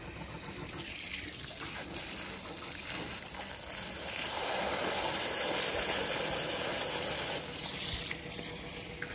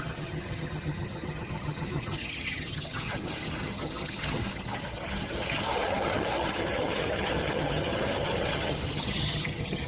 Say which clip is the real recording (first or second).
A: first